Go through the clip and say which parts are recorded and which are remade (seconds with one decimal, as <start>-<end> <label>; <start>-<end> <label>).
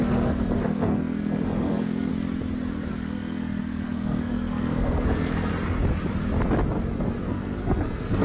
0.0-2.1 remade; 2.1-2.9 recorded; 2.9-5.5 remade; 5.5-7.3 recorded; 7.3-8.2 remade